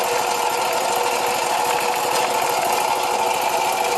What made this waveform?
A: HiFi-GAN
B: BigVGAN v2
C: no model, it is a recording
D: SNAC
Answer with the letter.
C